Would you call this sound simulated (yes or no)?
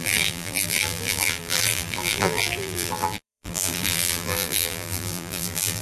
yes